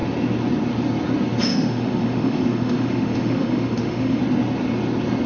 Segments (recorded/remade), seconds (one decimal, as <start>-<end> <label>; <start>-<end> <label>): 0.0-1.5 recorded; 1.5-4.2 remade; 4.2-5.3 recorded